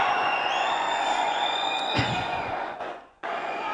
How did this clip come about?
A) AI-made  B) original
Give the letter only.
A